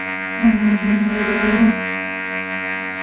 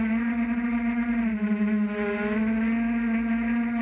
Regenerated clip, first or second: first